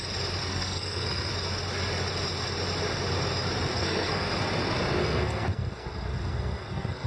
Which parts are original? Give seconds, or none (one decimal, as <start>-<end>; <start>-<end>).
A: 0.0-0.4; 1.3-3.8; 4.4-5.0